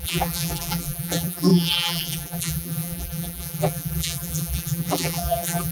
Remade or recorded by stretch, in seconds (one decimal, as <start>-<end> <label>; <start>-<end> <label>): 0.0-5.7 remade